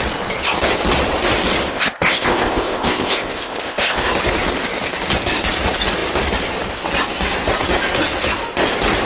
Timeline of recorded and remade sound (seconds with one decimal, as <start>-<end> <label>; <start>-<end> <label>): 0.0-1.7 recorded; 1.7-4.1 remade; 4.1-9.0 recorded